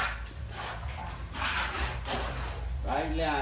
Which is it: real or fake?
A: real